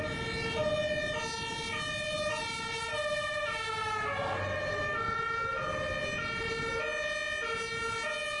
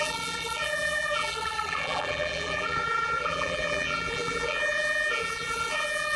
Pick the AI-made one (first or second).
second